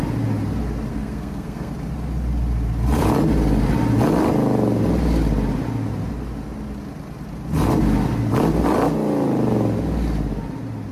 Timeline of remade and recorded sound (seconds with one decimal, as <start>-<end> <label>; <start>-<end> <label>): 0.0-0.9 recorded; 0.9-1.7 remade; 1.7-10.9 recorded